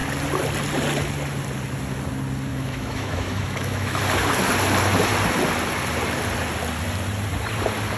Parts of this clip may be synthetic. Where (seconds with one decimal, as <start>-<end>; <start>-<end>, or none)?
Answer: 2.5-4.0